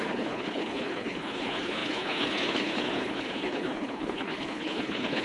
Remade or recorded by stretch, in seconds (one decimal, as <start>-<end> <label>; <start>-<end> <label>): 0.0-5.2 remade